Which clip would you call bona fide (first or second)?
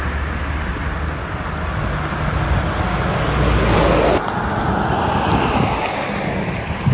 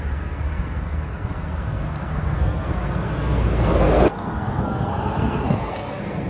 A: first